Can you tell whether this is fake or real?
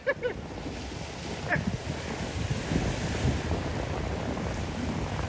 real